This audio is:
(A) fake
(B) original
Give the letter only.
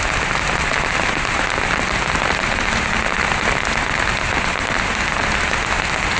B